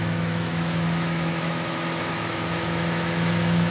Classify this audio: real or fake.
fake